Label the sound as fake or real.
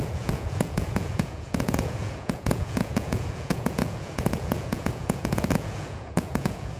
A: fake